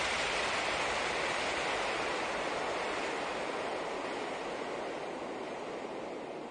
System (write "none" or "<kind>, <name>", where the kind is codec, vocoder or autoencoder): none